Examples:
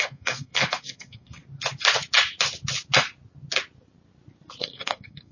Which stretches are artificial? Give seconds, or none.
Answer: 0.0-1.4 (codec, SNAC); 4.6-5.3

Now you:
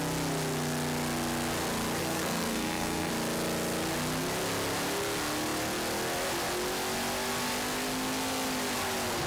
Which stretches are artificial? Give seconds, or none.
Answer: 2.0-3.1 (codec, SNAC)

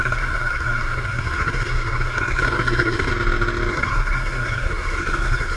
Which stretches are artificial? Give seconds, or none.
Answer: 0.0-3.1 (codec, SNAC); 3.7-5.6

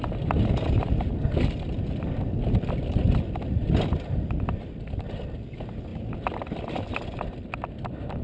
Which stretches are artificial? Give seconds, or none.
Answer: none

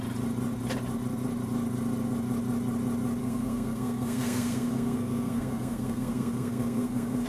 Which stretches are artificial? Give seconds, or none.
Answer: 3.2-7.3 (codec, SNAC)